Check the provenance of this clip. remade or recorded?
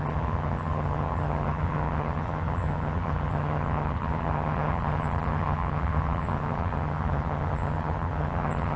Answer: remade